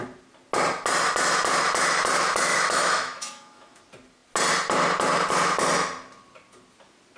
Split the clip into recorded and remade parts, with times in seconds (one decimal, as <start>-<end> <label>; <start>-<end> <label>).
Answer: 0.0-2.5 recorded; 2.5-3.8 remade; 3.8-7.2 recorded